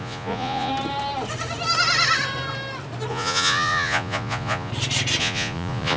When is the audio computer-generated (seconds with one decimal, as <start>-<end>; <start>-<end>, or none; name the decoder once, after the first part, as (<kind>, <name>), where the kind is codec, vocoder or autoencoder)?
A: 0.0-0.7 (vocoder, Vocos); 3.1-4.7; 5.2-6.0